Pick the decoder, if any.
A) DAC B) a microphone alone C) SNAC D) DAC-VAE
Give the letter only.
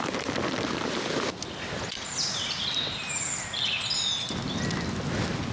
B